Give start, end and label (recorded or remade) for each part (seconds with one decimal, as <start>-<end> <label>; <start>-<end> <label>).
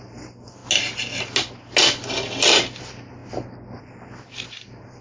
0.0-0.6 remade; 0.6-2.8 recorded; 2.8-3.2 remade; 3.2-3.8 recorded; 3.8-5.0 remade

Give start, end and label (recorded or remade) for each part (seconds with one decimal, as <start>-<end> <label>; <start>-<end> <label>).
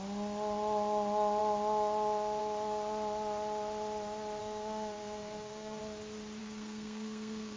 0.0-4.4 recorded; 4.4-5.8 remade; 5.8-6.4 recorded; 6.4-7.6 remade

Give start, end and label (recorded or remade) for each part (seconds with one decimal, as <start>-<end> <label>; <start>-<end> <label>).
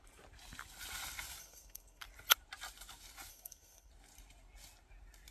0.0-1.4 recorded; 1.4-2.0 remade; 2.0-3.3 recorded; 3.3-3.9 remade; 3.9-5.3 recorded